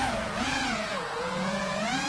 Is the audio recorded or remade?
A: remade